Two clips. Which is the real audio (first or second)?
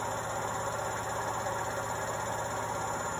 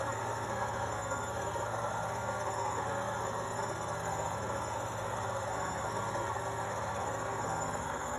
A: first